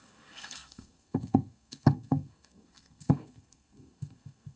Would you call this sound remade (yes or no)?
yes